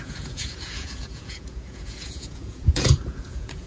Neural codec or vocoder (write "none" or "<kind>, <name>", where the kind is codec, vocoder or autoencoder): vocoder, Vocos